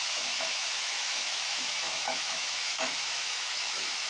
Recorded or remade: remade